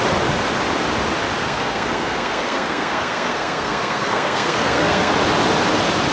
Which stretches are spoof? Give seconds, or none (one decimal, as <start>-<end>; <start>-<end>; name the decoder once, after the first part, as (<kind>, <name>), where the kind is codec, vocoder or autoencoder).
1.4-5.1 (codec, SNAC)